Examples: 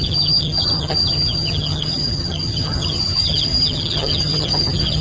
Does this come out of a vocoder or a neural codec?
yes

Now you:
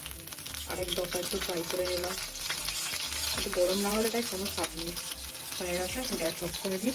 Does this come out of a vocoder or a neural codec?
no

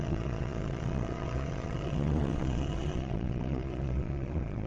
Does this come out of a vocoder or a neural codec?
yes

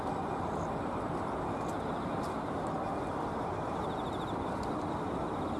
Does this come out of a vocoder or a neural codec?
no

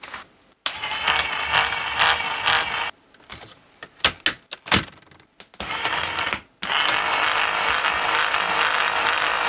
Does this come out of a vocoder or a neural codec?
no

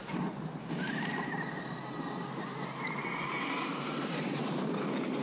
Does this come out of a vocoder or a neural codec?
no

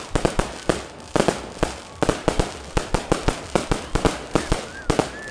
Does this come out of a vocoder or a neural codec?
no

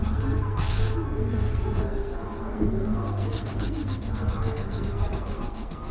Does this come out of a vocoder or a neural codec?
yes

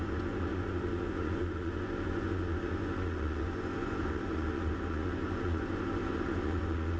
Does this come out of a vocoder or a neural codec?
yes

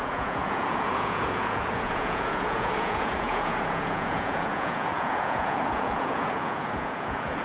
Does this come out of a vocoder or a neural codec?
yes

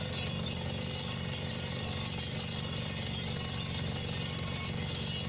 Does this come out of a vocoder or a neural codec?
no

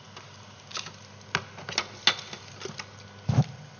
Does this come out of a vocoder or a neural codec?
no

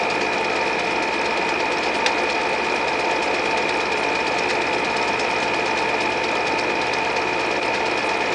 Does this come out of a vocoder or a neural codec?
no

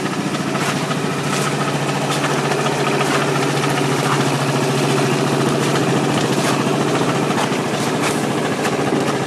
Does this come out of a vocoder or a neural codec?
no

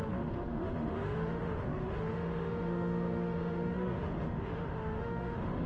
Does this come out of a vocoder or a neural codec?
yes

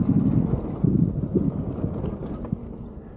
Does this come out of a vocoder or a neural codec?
no